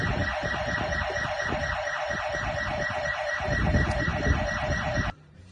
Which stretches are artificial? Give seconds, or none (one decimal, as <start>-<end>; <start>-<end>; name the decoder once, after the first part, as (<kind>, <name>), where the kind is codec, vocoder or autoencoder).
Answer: none